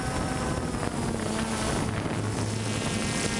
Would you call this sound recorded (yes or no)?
yes